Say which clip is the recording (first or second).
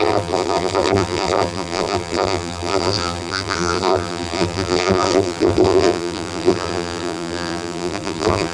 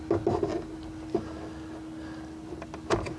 second